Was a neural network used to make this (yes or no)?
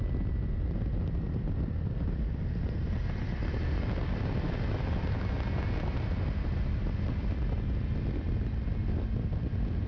no